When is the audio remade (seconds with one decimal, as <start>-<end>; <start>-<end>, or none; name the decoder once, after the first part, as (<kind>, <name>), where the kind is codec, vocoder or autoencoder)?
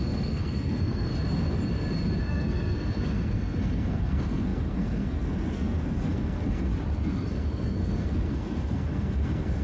0.0-1.1 (codec, SNAC); 2.2-6.7; 7.3-9.6